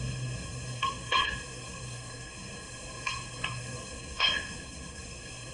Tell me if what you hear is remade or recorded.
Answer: remade